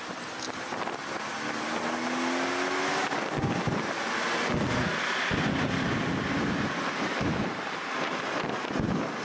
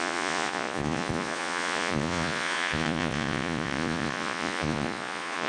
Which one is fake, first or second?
second